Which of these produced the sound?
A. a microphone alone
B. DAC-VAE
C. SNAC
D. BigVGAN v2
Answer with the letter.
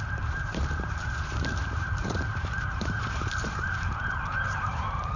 D